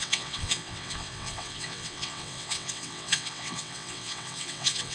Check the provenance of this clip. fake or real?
fake